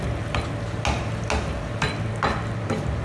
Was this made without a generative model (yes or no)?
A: yes